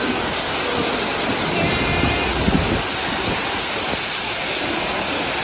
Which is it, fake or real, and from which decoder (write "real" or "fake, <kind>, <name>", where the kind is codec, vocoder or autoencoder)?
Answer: real